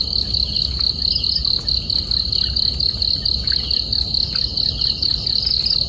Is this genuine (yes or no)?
yes